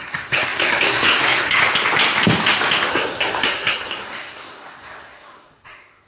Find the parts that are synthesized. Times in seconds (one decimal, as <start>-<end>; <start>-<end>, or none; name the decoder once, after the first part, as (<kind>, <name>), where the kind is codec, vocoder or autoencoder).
0.0-1.6 (codec, SNAC); 2.9-6.1